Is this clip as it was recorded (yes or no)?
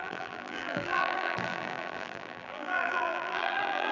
no